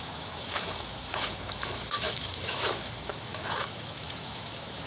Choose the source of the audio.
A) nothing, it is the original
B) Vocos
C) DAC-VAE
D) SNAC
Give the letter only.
C